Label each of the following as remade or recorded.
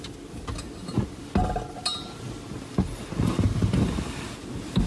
recorded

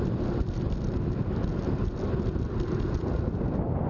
recorded